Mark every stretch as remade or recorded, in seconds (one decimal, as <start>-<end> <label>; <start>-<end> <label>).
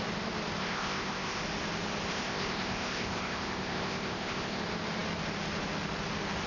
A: 0.0-0.6 recorded; 0.6-1.4 remade; 1.4-2.1 recorded; 2.1-4.6 remade; 4.6-6.5 recorded